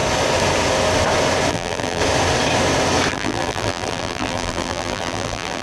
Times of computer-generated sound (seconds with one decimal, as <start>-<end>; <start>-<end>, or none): 1.5-2.0; 3.1-5.6